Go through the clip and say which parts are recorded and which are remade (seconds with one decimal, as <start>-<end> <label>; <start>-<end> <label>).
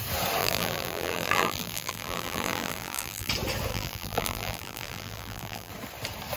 0.0-0.4 recorded; 0.4-3.3 remade; 3.3-3.7 recorded; 3.7-5.7 remade; 5.7-6.4 recorded